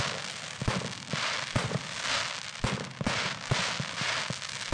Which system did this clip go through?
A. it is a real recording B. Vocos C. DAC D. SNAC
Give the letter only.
A